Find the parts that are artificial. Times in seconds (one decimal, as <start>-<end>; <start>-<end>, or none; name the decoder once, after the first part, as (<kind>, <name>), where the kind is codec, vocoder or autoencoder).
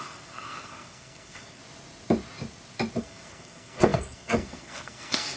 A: 0.0-1.6 (codec, SNAC); 3.0-5.4